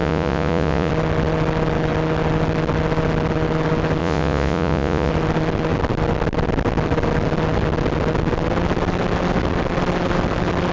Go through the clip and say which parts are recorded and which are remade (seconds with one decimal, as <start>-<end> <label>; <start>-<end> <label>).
0.0-0.9 remade; 0.9-4.0 recorded; 4.0-5.1 remade; 5.1-10.7 recorded